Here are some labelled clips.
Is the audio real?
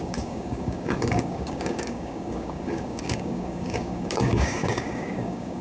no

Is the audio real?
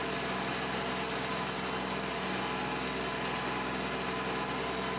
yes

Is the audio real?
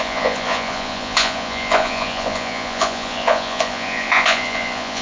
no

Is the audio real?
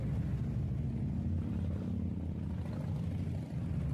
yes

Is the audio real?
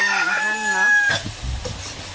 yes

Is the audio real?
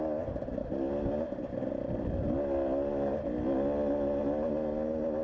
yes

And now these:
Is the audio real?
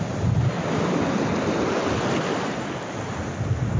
yes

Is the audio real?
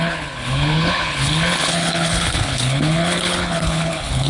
no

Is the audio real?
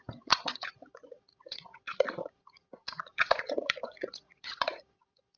no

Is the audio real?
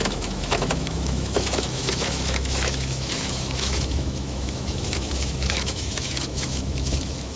no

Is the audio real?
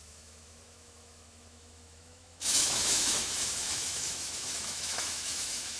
no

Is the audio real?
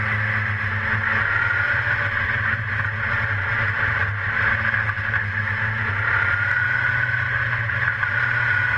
yes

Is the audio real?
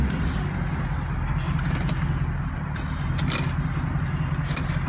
yes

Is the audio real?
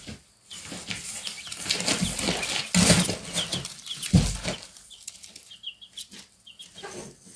yes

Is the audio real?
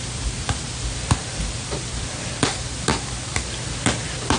yes